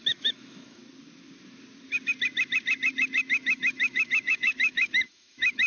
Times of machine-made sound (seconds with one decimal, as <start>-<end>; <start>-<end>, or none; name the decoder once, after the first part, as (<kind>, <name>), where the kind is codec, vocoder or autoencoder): 0.0-0.8 (autoencoder, DAC-VAE); 3.3-5.7